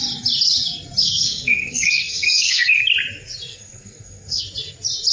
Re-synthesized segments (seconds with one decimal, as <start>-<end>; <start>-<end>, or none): 1.0-2.8; 3.5-4.4